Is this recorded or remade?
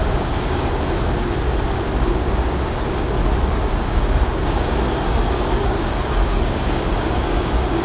remade